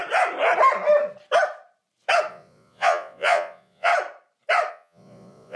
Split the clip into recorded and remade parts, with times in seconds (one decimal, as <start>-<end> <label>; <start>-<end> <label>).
0.0-2.3 recorded; 2.3-3.9 remade; 3.9-4.7 recorded; 4.7-5.6 remade